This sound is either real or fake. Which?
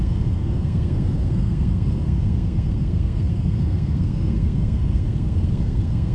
fake